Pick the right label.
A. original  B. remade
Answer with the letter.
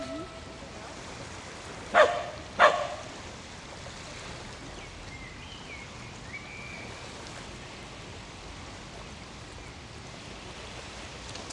A